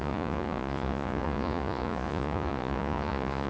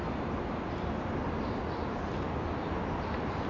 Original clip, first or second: second